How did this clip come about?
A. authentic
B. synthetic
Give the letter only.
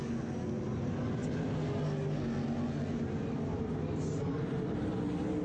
A